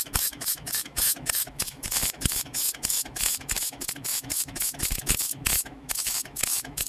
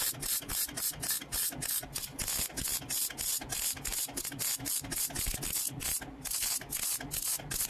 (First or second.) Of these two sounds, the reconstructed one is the first